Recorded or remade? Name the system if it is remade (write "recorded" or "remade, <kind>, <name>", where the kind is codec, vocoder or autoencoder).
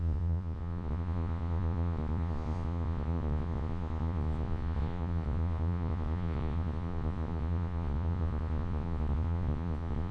remade, vocoder, Vocos